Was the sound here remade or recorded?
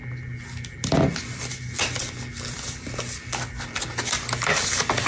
recorded